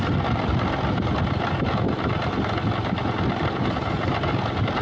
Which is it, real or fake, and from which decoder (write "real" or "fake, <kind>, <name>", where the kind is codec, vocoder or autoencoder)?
real